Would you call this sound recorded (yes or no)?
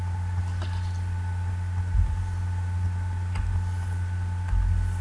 yes